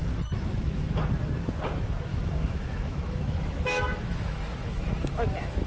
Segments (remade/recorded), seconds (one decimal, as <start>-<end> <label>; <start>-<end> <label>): 0.0-1.0 remade; 1.0-2.1 recorded; 2.1-5.7 remade